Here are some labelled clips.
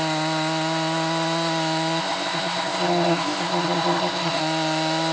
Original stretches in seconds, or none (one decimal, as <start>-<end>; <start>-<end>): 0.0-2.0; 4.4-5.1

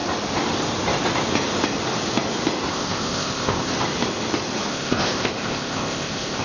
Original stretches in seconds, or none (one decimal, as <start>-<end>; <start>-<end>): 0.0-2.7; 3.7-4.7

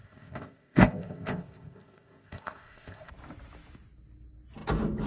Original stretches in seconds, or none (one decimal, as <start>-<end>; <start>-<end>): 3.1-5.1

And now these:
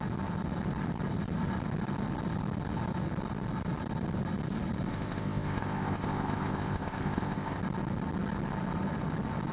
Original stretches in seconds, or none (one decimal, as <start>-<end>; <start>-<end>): 0.0-4.9; 7.6-9.5

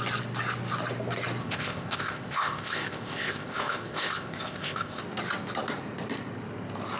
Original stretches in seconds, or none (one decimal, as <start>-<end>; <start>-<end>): 0.0-1.4; 5.0-7.0

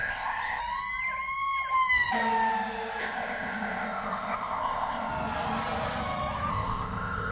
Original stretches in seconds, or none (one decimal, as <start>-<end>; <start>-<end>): 0.6-3.0; 5.1-6.5